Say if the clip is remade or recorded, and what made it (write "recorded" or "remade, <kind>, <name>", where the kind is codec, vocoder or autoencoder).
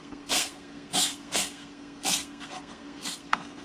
remade, codec, SNAC